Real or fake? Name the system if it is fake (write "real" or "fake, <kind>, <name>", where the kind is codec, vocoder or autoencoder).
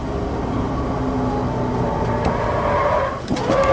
real